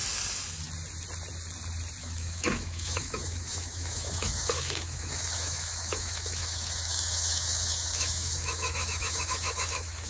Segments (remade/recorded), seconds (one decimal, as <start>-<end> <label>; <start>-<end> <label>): 0.0-2.0 recorded; 2.0-10.1 remade